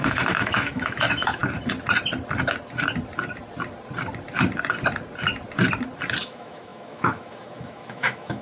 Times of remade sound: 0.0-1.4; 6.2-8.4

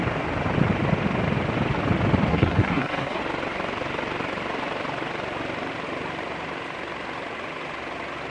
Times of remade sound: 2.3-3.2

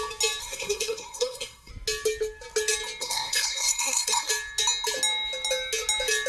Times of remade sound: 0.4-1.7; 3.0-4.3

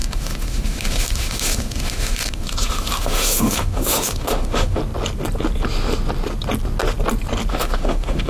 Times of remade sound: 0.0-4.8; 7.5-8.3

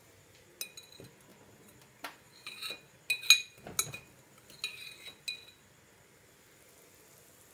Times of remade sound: none